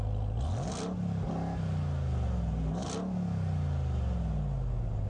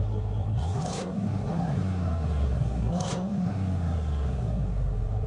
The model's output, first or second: second